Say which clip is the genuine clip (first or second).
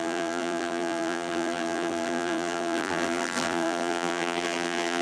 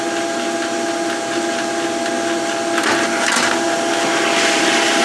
second